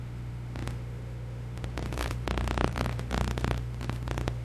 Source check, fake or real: fake